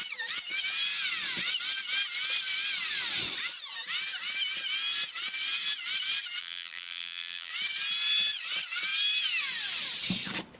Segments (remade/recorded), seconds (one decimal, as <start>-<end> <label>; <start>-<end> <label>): 0.0-6.4 recorded; 6.4-7.5 remade; 7.5-10.6 recorded